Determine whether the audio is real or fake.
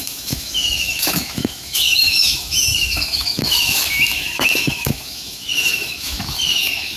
fake